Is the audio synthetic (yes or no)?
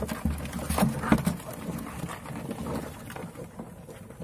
no